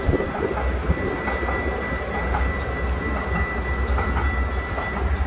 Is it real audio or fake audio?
real